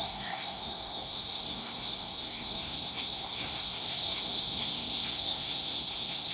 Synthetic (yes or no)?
yes